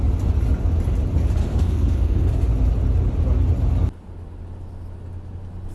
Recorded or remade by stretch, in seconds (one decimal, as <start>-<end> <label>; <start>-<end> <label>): 0.0-1.4 recorded; 1.4-2.3 remade; 2.3-5.7 recorded